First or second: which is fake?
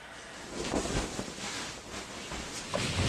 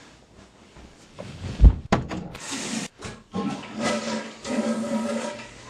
second